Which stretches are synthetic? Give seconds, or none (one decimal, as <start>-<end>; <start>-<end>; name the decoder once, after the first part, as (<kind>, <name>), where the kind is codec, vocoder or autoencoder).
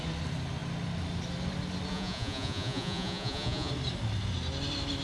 1.9-3.7 (vocoder, Vocos)